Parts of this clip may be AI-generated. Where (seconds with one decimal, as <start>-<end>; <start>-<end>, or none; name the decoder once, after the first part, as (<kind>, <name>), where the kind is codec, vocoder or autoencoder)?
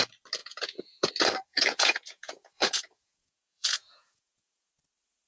0.4-1.1 (vocoder, Vocos); 1.5-4.7